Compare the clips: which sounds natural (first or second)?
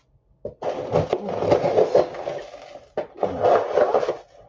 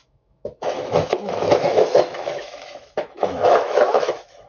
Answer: first